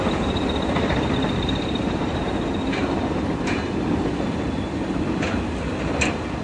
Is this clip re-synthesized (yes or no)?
no